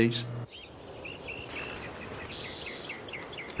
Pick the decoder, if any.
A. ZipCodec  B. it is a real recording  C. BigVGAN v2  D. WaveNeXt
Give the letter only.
B